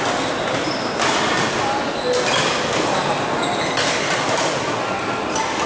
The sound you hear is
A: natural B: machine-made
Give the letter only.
A